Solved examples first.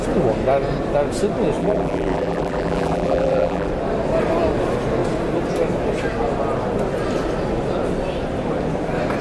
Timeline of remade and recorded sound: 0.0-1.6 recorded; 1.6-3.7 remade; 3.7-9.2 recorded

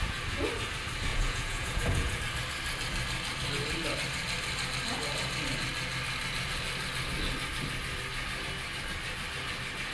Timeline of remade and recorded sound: 0.0-1.1 recorded; 1.1-2.2 remade; 2.2-9.9 recorded

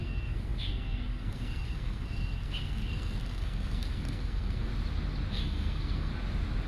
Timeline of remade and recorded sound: 0.0-4.7 remade; 4.7-5.3 recorded; 5.3-6.1 remade; 6.1-6.7 recorded

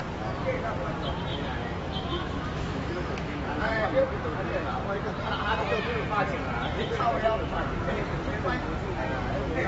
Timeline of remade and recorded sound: 0.0-1.3 recorded; 1.3-5.2 remade; 5.2-9.7 recorded